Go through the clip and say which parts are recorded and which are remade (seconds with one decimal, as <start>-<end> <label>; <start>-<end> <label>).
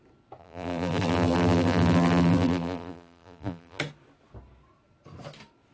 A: 0.0-0.4 recorded; 0.4-3.8 remade; 3.8-5.7 recorded